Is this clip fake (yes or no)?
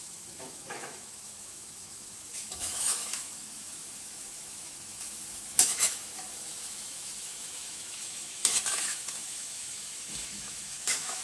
yes